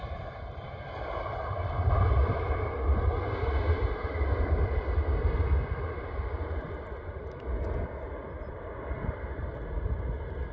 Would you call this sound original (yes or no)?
yes